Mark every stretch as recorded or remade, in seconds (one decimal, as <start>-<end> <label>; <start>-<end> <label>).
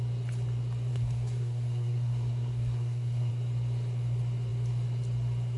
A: 0.0-0.9 recorded; 0.9-3.3 remade; 3.3-5.6 recorded